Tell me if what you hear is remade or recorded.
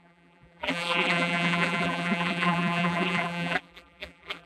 remade